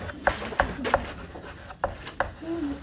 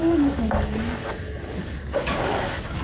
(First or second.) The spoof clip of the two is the second